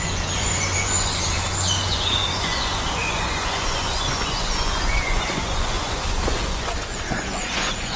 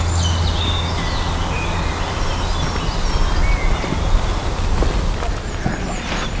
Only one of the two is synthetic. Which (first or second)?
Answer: first